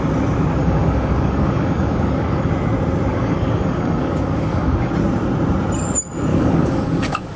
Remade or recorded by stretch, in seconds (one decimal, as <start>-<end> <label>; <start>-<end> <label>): 0.0-0.6 recorded; 0.6-2.5 remade; 2.5-3.1 recorded; 3.1-4.9 remade; 4.9-6.3 recorded; 6.3-7.4 remade